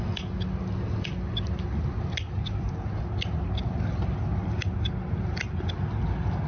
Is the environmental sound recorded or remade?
recorded